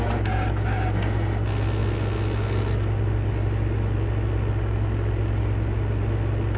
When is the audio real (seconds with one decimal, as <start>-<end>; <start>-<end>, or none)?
0.0-6.6